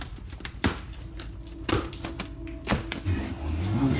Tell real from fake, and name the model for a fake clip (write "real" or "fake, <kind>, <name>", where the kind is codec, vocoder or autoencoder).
fake, vocoder, BigVGAN v2